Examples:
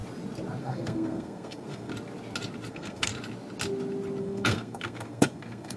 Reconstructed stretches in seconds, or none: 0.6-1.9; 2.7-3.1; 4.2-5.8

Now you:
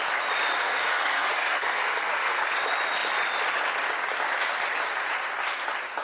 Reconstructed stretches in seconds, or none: 0.6-2.4

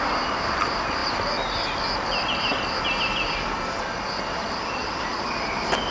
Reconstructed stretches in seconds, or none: 0.0-5.9

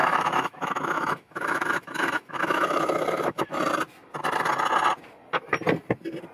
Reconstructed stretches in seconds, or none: 0.0-3.6

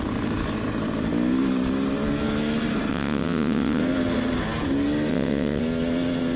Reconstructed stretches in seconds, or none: 2.9-3.8; 5.1-5.6

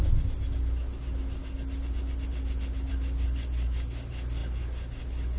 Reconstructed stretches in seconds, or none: none